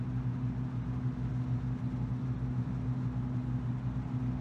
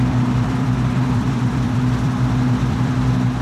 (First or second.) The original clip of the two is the first